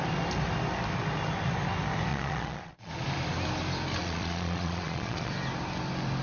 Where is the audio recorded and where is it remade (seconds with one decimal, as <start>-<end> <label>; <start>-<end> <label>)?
0.0-2.1 recorded; 2.1-2.9 remade; 2.9-4.0 recorded; 4.0-5.3 remade; 5.3-6.2 recorded